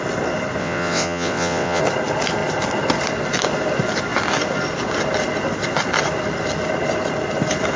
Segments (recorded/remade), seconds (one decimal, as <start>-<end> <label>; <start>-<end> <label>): 0.0-0.6 recorded; 0.6-1.8 remade; 1.8-7.8 recorded